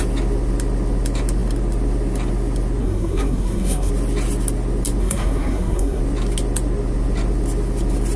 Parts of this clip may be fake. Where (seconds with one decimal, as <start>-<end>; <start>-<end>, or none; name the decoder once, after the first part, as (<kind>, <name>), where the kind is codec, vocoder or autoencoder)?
2.8-3.9 (codec, SNAC); 5.0-6.0